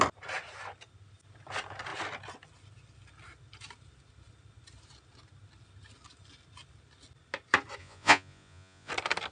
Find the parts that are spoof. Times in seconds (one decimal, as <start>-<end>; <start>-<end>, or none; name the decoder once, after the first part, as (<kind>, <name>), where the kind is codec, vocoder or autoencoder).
7.8-8.9 (vocoder, Vocos)